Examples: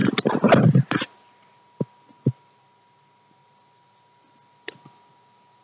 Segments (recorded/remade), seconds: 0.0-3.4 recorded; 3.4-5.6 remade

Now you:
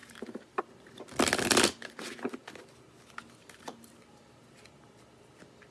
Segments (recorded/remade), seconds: 0.0-0.6 remade; 0.6-3.4 recorded; 3.4-4.3 remade; 4.3-5.7 recorded

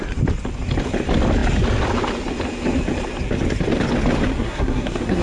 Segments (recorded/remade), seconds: 0.0-4.3 recorded; 4.3-5.2 remade

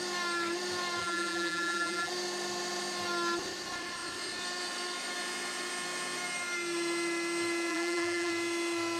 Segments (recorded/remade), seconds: 0.0-1.0 recorded; 1.0-2.1 remade; 2.1-7.7 recorded; 7.7-8.3 remade; 8.3-9.0 recorded

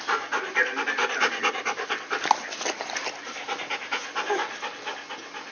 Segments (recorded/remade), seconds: 0.0-5.5 recorded